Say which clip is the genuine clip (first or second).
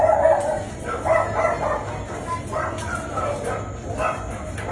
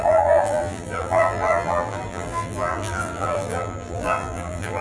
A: first